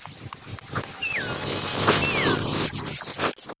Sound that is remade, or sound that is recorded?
recorded